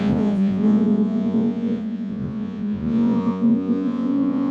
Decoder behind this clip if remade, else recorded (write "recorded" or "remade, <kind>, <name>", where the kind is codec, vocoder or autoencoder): remade, vocoder, Vocos